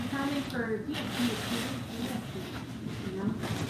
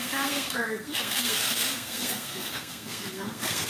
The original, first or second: first